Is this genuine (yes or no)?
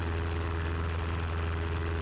yes